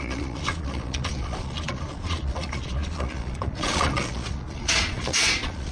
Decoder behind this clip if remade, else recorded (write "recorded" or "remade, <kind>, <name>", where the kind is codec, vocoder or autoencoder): remade, vocoder, Vocos